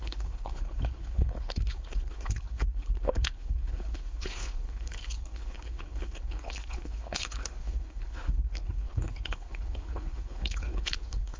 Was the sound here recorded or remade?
remade